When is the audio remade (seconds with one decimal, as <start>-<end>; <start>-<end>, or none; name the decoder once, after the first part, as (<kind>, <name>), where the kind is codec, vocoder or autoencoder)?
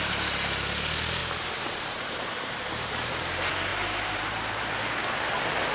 1.2-3.1 (vocoder, BigVGAN v2); 3.7-4.6